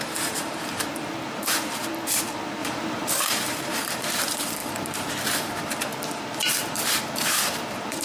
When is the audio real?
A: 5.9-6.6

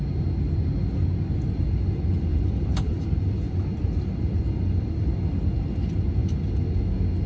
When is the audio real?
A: 0.0-2.3; 5.7-7.3

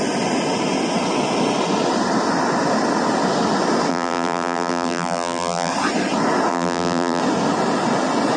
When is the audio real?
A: 0.0-3.9; 5.7-6.5; 7.2-8.4

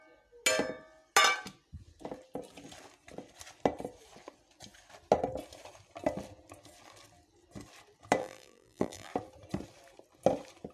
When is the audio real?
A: 0.0-8.2; 9.1-10.7

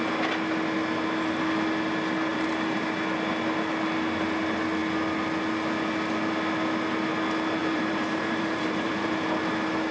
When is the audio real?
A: 0.0-2.3; 2.9-7.6; 9.1-9.9